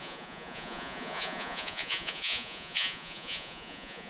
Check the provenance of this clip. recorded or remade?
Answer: remade